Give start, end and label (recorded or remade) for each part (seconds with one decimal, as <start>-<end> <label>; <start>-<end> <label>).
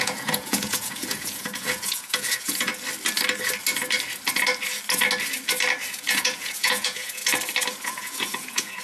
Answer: 0.0-2.7 remade; 2.7-5.9 recorded; 5.9-7.2 remade; 7.2-7.8 recorded; 7.8-8.8 remade